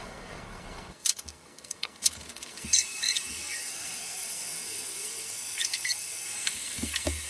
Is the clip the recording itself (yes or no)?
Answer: no